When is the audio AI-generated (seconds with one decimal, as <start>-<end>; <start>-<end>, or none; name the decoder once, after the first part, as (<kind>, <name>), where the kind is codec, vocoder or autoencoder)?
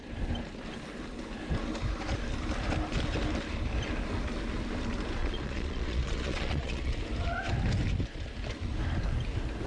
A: 5.2-7.0 (vocoder, Vocos)